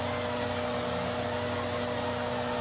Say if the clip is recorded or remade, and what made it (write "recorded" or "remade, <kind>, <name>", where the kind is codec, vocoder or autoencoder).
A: recorded